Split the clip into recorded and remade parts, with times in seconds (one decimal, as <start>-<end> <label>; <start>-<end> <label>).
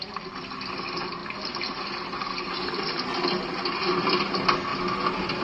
0.0-5.4 recorded